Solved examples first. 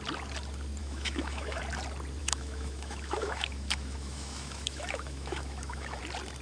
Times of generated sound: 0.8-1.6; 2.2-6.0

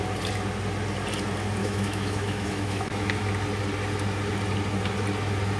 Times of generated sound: 1.6-3.2

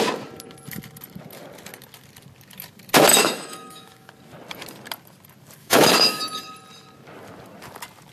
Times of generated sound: 3.1-4.1; 5.6-6.2

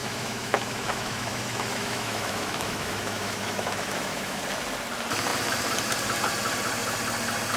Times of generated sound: 0.0-4.4